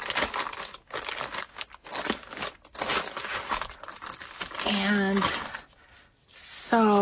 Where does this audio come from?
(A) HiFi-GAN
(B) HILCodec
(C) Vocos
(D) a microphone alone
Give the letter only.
D